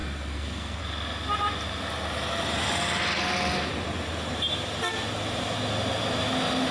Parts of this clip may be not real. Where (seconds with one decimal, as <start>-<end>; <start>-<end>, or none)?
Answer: 0.0-0.8